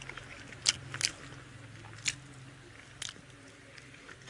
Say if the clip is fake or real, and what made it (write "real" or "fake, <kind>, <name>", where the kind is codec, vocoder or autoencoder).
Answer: real